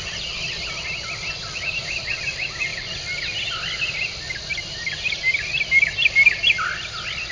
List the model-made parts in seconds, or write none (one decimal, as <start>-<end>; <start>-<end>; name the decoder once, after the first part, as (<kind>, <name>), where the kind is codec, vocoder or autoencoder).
none